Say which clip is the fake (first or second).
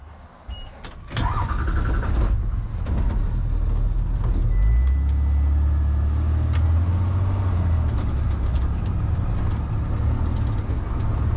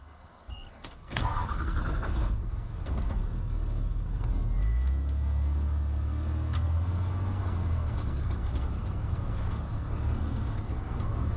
second